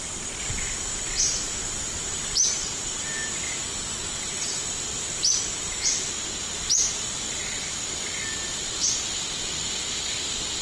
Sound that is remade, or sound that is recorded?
remade